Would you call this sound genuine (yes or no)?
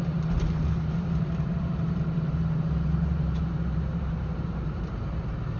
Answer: no